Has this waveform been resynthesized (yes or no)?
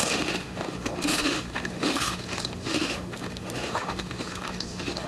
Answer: yes